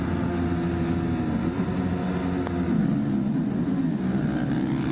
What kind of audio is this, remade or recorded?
recorded